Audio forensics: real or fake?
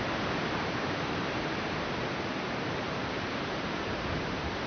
fake